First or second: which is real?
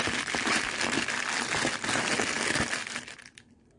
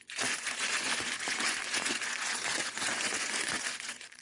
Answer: first